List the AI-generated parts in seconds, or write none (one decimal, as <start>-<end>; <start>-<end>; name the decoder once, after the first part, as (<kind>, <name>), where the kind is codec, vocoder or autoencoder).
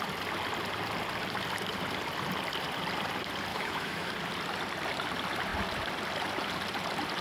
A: 3.5-4.1 (autoencoder, DAC-VAE)